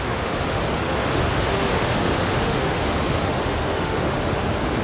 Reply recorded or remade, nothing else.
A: remade